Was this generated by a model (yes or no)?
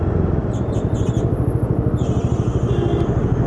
no